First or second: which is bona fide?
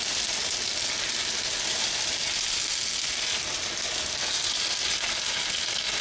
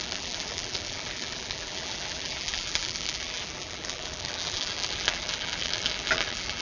first